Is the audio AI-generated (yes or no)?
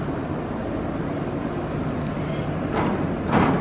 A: no